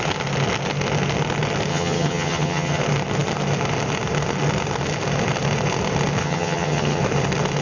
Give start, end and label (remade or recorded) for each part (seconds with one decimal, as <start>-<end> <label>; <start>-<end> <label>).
0.0-1.7 recorded; 1.7-2.8 remade; 2.8-6.2 recorded; 6.2-7.0 remade; 7.0-7.6 recorded